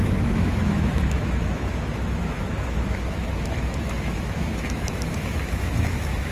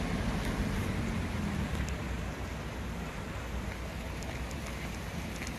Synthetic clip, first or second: first